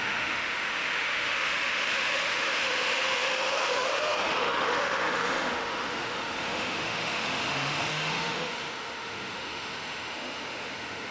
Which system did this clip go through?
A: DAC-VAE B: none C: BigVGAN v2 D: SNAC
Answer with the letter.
A